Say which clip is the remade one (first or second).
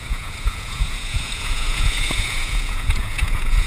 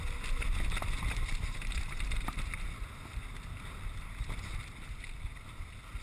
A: first